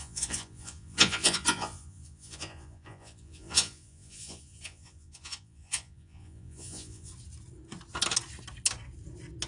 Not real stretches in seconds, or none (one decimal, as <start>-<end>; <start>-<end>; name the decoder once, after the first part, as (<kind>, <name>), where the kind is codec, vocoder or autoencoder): 0.0-7.1 (vocoder, Vocos)